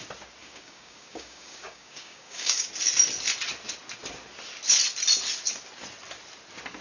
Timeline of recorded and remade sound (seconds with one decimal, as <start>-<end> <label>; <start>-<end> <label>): 0.0-0.4 recorded; 0.4-2.7 remade; 2.7-6.8 recorded